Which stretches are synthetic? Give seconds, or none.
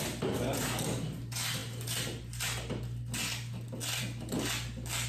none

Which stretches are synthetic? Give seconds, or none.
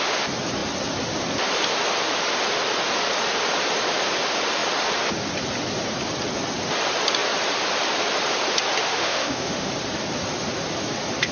8.8-9.7 (autoencoder, DAC-VAE)